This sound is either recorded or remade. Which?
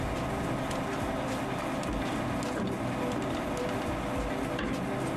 recorded